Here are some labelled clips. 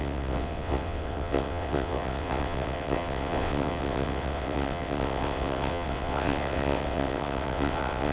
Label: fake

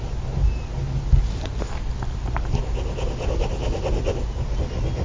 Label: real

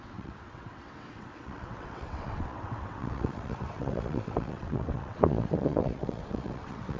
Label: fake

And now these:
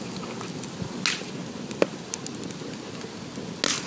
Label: real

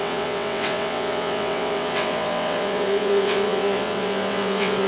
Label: fake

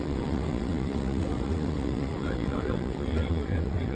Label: fake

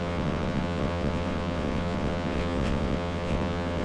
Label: fake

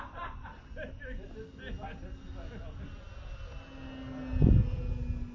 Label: real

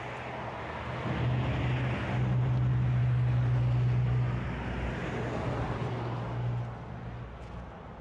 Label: real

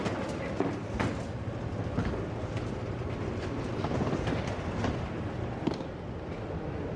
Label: real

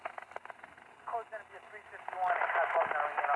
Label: real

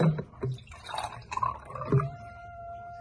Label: real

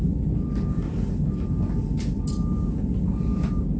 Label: real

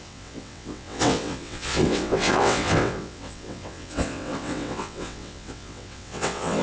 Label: fake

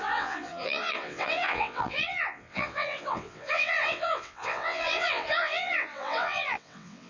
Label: fake